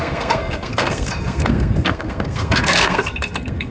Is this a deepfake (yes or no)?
yes